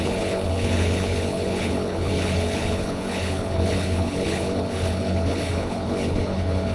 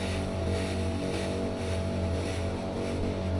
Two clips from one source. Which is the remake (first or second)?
first